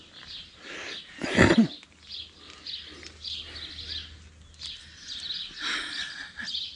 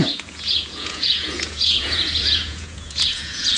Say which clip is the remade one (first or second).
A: second